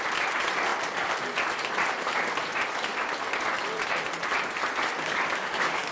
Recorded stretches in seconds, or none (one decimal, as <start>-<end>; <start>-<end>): 0.0-4.9